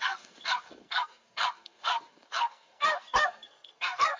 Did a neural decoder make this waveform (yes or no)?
yes